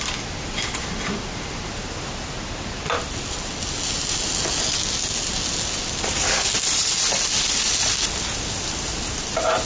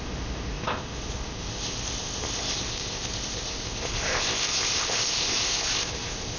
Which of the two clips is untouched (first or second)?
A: first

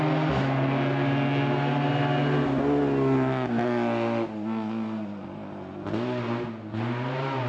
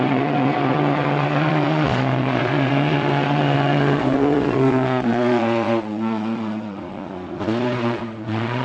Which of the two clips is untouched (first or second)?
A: first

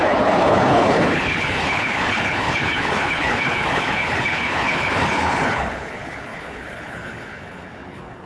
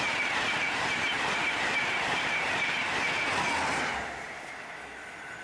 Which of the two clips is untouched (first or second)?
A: second